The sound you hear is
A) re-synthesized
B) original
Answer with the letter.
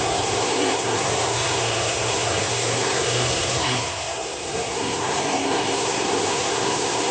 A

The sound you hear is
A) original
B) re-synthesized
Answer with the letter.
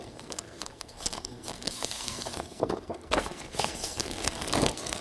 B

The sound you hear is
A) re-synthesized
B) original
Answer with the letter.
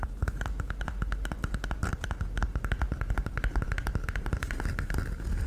B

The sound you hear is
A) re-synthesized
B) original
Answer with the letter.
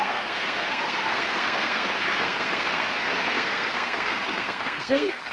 A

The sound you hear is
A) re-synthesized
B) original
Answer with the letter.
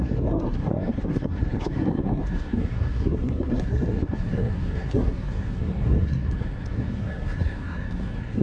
A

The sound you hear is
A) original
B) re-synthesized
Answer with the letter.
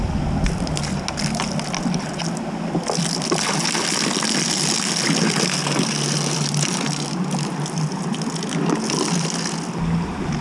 A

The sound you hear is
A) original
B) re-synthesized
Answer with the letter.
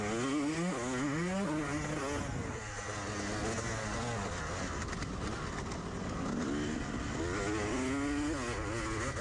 A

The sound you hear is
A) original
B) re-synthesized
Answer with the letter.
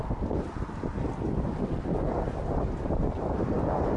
A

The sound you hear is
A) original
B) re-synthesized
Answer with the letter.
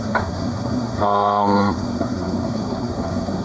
B